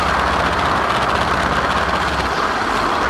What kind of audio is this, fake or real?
real